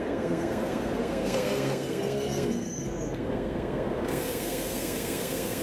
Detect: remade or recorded remade